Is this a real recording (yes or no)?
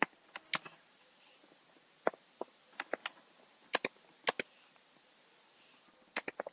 yes